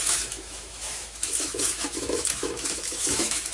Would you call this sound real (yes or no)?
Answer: no